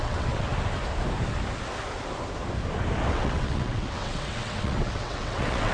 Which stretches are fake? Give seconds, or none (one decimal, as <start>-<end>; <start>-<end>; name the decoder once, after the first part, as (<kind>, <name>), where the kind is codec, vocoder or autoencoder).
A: 0.0-0.5 (vocoder, WaveNeXt); 3.1-5.7